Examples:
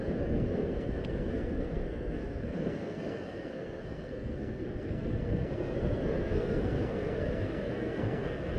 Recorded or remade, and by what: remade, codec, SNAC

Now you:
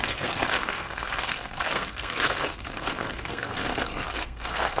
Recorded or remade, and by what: remade, codec, SNAC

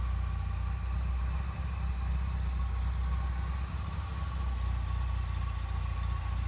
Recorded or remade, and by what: recorded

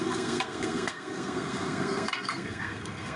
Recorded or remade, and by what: remade, codec, SNAC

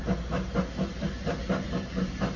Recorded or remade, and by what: recorded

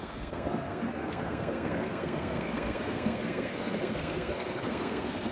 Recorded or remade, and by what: remade, codec, SNAC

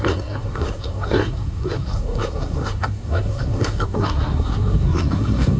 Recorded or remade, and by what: remade, codec, SNAC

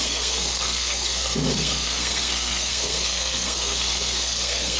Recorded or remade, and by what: remade, codec, SNAC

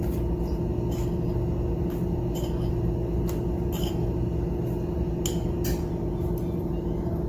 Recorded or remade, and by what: recorded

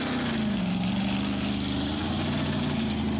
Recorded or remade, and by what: recorded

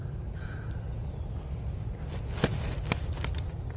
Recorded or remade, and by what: recorded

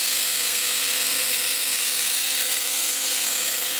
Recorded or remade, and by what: remade, codec, SNAC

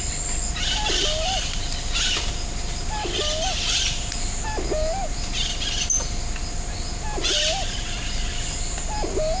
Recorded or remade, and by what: recorded